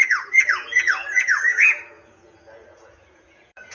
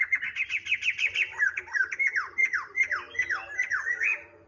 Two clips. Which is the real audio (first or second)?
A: second